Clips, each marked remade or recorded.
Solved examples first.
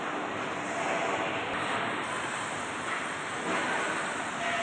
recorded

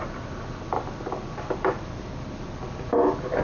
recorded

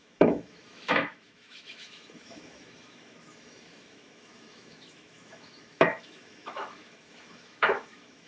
remade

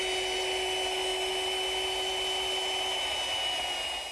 recorded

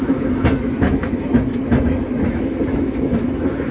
remade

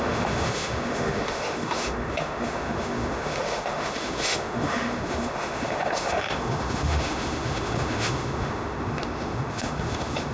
remade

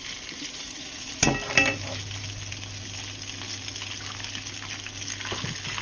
recorded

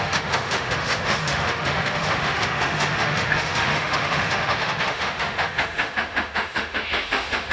remade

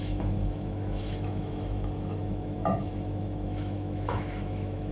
remade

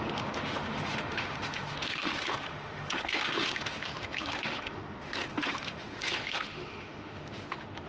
remade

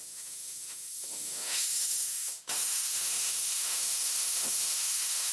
remade